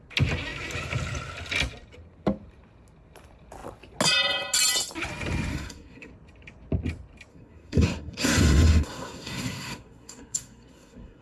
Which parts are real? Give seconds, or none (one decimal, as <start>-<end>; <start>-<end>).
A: 0.0-5.5; 6.1-7.3